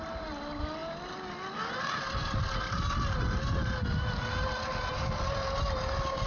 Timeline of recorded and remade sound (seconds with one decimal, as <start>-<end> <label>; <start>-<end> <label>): 0.0-6.3 recorded